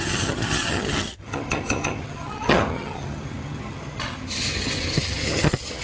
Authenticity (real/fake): fake